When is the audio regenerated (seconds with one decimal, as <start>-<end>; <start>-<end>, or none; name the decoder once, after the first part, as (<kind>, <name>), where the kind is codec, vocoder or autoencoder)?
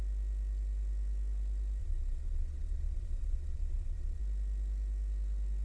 1.8-4.2 (vocoder, Vocos)